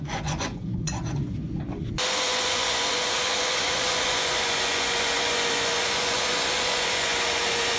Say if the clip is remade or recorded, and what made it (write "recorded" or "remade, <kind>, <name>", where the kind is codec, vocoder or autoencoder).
remade, vocoder, Vocos